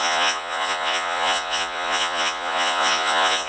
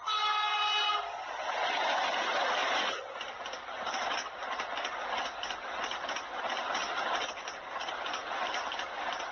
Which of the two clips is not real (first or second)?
first